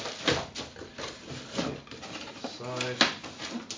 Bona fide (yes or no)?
yes